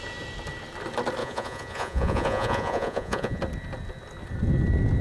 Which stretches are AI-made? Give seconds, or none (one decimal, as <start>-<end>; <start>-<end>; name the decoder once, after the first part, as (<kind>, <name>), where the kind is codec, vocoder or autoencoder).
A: 1.2-3.4 (vocoder, Vocos)